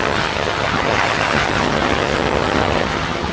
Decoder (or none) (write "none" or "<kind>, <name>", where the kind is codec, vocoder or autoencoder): vocoder, HiFi-GAN